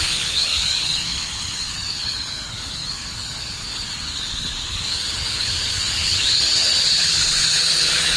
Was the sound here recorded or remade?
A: remade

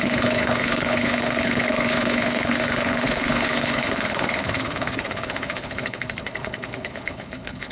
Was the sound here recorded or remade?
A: remade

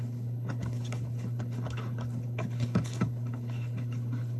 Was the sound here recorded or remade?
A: remade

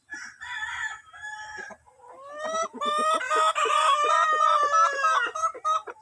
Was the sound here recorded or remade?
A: recorded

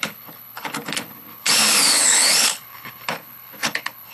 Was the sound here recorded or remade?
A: remade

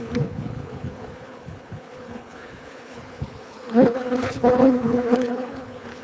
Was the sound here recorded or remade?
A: remade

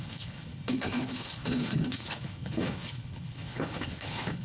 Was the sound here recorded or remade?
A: remade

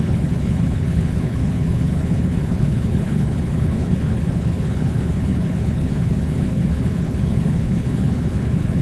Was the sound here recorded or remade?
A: remade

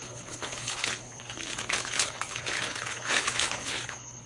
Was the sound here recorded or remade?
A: remade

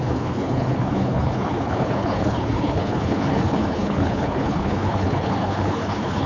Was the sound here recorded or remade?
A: remade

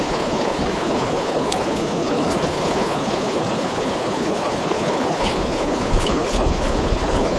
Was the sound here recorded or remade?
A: remade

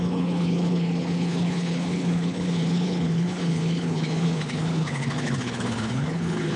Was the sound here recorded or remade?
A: remade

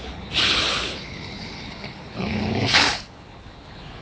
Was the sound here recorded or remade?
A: remade